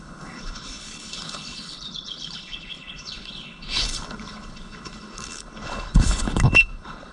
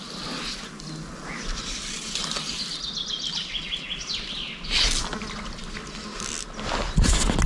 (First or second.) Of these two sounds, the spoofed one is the first